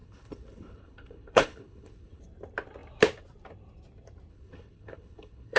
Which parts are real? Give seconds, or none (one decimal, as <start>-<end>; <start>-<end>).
2.2-4.3